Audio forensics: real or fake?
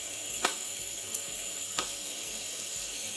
fake